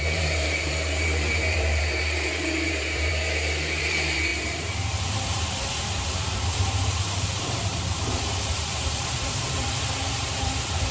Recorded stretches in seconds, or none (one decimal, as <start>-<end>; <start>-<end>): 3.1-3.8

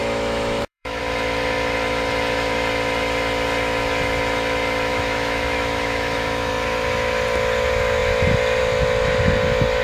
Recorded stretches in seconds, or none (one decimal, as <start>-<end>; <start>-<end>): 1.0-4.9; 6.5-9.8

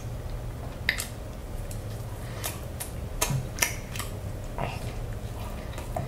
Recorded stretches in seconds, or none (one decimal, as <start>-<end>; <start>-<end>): 0.0-1.4; 4.8-6.1